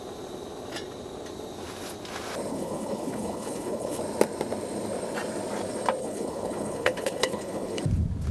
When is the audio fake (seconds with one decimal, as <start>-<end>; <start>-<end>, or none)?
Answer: 2.5-4.0; 6.0-7.8